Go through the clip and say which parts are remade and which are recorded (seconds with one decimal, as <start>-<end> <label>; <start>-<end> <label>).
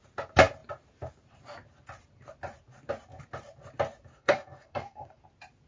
0.0-4.1 recorded; 4.1-5.2 remade; 5.2-5.7 recorded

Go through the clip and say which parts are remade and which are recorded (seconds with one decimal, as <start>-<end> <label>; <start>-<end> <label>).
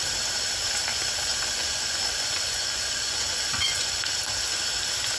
0.0-0.9 recorded; 0.9-4.0 remade; 4.0-5.2 recorded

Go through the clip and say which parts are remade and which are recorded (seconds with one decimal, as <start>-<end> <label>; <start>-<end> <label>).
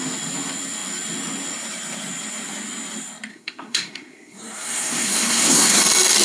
0.0-3.3 recorded; 3.3-5.8 remade; 5.8-6.2 recorded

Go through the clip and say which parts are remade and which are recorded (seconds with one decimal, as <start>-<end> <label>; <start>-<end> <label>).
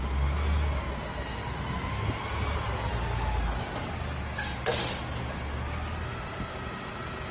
0.0-7.3 recorded